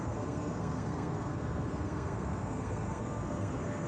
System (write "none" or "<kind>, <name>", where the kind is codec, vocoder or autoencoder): codec, SNAC